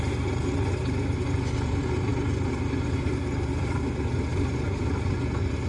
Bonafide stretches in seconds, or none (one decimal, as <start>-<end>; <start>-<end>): 0.0-5.7